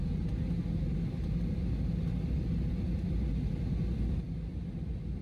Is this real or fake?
real